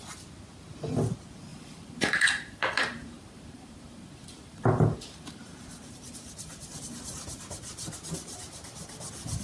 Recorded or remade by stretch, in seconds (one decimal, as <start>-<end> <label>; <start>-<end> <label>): 0.0-1.5 recorded; 1.5-6.8 remade; 6.8-9.4 recorded